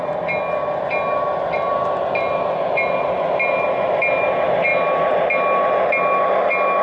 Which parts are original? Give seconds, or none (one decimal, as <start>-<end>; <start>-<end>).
0.0-6.8